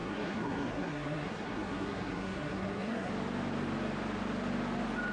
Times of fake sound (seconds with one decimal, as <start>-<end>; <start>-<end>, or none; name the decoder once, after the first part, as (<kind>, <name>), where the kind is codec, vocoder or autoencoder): 0.0-3.1 (codec, SNAC)

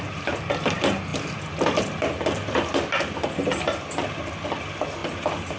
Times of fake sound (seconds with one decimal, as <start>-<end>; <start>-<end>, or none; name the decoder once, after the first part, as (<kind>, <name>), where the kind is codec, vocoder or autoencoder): none

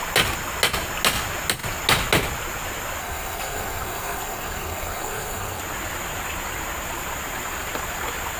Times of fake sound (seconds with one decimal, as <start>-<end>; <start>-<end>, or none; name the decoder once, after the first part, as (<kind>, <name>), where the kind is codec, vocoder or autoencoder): 3.0-5.6 (codec, SNAC)

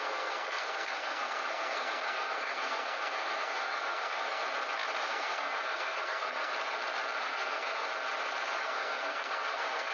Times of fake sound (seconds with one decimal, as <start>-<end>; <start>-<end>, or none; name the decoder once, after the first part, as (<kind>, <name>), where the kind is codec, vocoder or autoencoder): 0.0-4.4 (codec, SNAC); 5.1-6.5; 7.2-7.9; 8.6-9.9

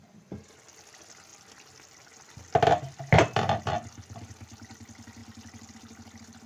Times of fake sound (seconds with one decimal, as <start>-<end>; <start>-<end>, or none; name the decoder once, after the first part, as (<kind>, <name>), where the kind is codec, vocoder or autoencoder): none

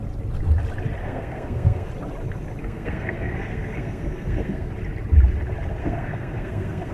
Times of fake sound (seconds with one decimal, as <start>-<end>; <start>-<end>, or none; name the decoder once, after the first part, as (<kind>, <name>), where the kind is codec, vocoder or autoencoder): 1.0-1.9 (codec, SNAC); 2.6-4.7; 5.8-6.9

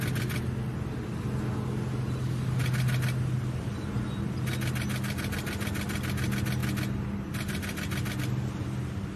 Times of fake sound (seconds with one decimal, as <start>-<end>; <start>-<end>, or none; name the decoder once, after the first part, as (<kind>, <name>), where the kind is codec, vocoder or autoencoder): none